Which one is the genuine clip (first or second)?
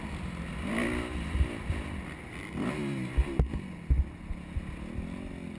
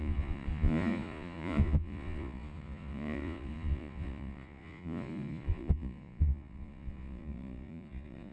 first